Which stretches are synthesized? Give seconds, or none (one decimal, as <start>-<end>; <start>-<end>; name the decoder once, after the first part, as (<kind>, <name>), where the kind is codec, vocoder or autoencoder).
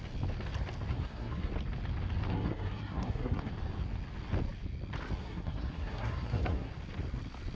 0.9-1.5 (codec, SNAC); 2.3-3.5; 5.2-6.7